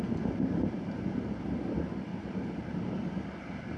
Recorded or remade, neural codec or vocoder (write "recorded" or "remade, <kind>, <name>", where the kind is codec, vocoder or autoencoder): recorded